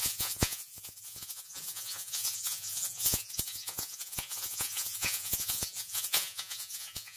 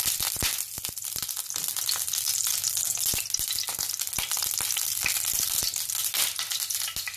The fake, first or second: first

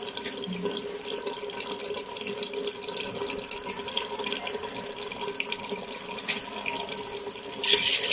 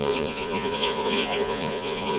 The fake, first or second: second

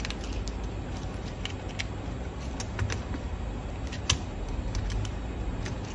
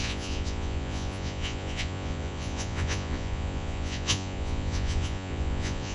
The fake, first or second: second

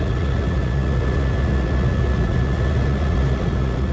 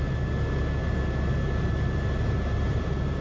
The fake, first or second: first